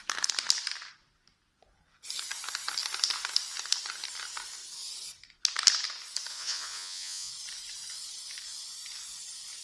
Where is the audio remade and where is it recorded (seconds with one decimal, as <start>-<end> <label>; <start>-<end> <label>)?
0.0-6.3 recorded; 6.3-7.3 remade; 7.3-9.6 recorded